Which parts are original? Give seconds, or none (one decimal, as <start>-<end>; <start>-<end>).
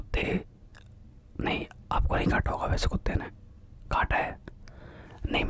0.0-5.5